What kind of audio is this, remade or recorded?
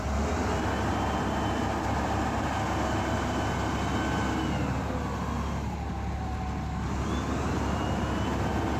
recorded